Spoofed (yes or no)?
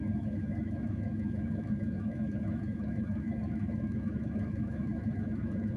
yes